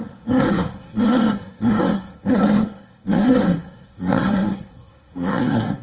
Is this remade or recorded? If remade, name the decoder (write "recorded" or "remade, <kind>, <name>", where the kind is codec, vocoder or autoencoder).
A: remade, codec, SNAC